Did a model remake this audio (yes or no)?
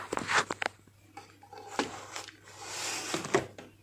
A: no